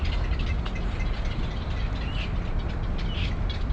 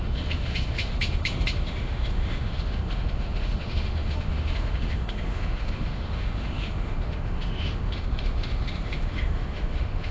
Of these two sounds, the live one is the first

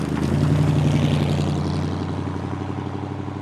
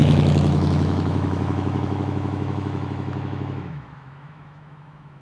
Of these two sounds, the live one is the first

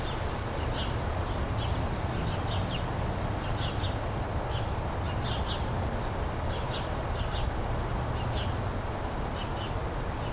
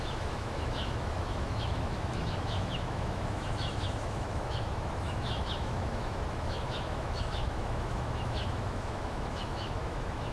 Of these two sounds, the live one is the first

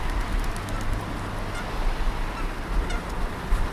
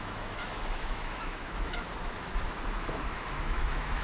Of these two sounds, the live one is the first